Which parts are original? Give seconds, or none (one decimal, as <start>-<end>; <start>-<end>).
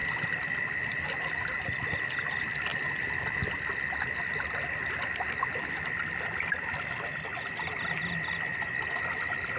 0.0-9.6